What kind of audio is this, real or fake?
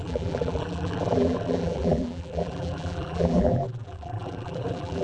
fake